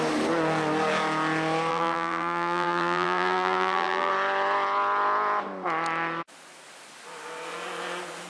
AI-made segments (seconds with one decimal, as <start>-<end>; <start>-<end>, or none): 1.7-4.1